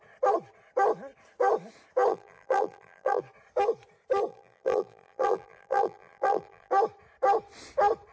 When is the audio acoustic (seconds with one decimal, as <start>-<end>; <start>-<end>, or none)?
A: 0.0-2.1; 3.2-4.3; 6.7-8.1